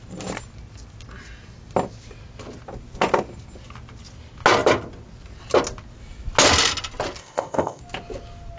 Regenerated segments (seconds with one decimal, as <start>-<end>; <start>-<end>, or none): 7.2-7.8